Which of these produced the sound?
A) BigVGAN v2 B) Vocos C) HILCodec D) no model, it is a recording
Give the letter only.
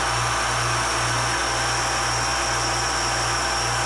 D